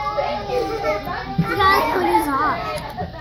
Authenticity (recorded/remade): recorded